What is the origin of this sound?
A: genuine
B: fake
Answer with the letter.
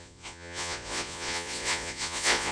B